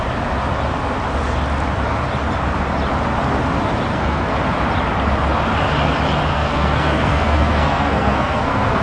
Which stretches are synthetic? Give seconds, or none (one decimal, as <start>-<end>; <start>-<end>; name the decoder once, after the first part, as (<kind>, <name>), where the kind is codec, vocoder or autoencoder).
3.9-4.4 (codec, SNAC); 6.3-8.8